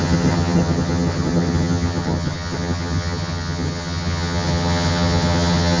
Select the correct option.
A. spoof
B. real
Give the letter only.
A